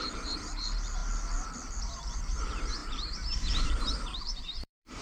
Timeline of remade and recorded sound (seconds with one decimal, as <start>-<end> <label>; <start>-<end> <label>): 0.0-1.0 remade; 1.0-1.7 recorded; 1.7-5.0 remade